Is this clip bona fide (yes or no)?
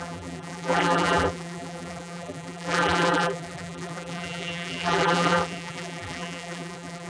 no